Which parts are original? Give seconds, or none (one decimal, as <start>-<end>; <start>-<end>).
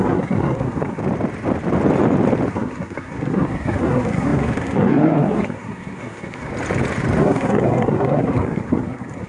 1.0-2.5; 6.5-7.2